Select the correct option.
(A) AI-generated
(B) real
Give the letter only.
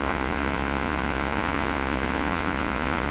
A